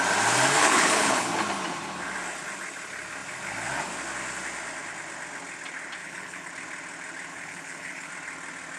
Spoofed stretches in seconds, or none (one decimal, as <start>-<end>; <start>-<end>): 0.6-1.3; 6.0-6.5; 7.3-8.1